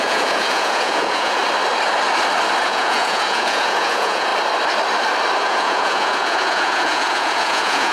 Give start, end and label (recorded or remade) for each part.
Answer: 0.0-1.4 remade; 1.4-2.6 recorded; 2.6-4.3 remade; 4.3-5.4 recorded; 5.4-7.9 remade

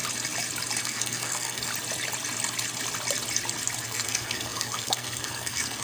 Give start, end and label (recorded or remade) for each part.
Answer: 0.0-0.8 recorded; 0.8-1.7 remade; 1.7-3.8 recorded; 3.8-5.8 remade

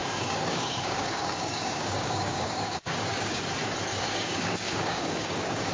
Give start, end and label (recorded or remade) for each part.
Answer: 0.0-3.4 remade; 3.4-3.9 recorded; 3.9-5.7 remade

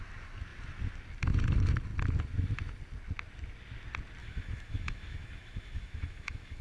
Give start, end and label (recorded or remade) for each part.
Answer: 0.0-4.2 recorded; 4.2-6.6 remade

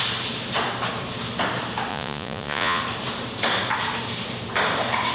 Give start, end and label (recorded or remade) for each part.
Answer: 0.0-1.9 recorded; 1.9-2.8 remade; 2.8-5.1 recorded

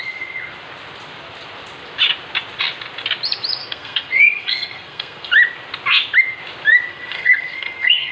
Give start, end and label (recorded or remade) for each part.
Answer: 0.0-3.6 recorded; 3.6-5.3 remade; 5.3-6.9 recorded; 6.9-8.1 remade